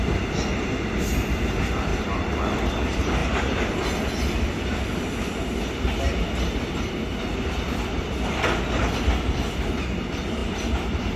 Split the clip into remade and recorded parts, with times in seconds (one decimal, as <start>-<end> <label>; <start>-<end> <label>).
0.0-1.9 recorded; 1.9-2.7 remade; 2.7-10.4 recorded; 10.4-11.2 remade